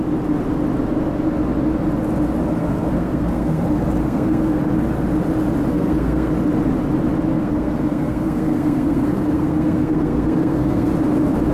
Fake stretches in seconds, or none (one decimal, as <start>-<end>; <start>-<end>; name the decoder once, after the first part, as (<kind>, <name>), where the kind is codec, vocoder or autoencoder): 2.6-3.6 (codec, SNAC); 4.0-4.6; 5.7-6.3; 7.3-10.9